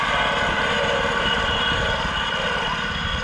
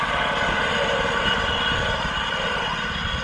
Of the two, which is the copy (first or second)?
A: second